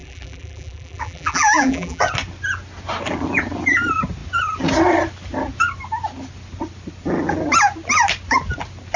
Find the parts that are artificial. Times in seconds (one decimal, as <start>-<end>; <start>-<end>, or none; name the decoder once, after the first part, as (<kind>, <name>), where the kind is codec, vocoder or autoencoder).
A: 0.0-2.0 (vocoder, BigVGAN v2)